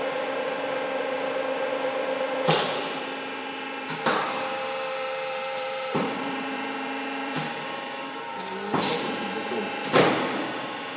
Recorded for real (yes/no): no